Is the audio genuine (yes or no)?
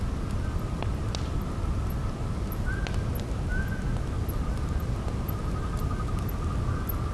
yes